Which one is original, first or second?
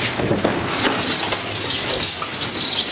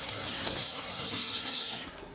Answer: first